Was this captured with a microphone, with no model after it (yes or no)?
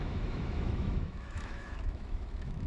no